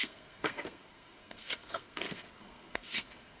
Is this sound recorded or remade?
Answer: remade